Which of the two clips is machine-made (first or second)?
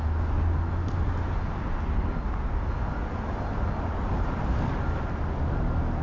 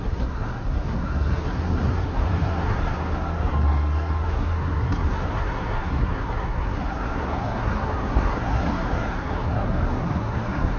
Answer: second